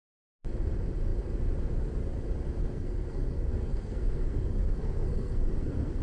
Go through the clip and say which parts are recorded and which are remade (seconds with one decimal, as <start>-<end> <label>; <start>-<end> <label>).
0.0-2.6 recorded; 2.6-6.0 remade

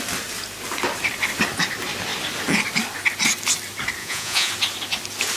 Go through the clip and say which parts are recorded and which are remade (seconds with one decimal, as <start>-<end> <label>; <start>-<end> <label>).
0.0-4.0 recorded; 4.0-4.5 remade; 4.5-5.4 recorded

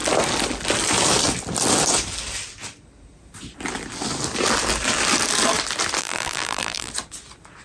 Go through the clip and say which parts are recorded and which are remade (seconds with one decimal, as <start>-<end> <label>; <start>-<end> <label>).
0.0-6.0 recorded; 6.0-6.9 remade; 6.9-7.6 recorded

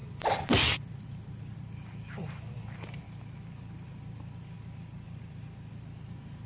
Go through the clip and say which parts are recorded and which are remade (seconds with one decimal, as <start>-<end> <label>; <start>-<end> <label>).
0.0-6.5 recorded

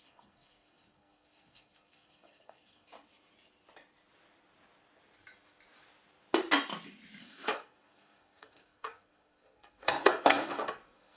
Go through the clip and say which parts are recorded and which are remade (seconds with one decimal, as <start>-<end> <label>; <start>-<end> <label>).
0.0-2.9 remade; 2.9-7.2 recorded; 7.2-11.2 remade